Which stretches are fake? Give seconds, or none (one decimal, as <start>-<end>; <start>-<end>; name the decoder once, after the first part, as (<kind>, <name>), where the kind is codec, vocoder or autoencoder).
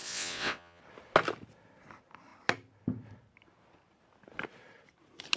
0.0-0.8 (vocoder, WaveNeXt)